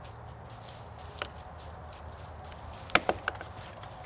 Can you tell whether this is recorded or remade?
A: recorded